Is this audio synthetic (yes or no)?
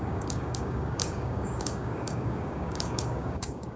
yes